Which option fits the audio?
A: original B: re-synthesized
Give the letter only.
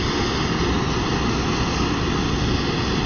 A